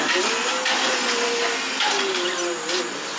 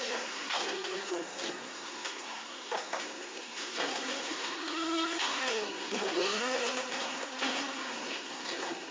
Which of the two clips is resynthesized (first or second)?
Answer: second